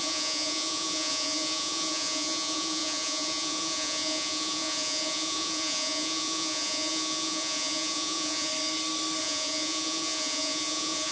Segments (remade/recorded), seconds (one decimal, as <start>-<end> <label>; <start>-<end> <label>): 0.0-8.5 remade; 8.5-9.2 recorded; 9.2-11.1 remade